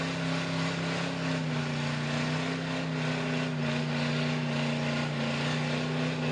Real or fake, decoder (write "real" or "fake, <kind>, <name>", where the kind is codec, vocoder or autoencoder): real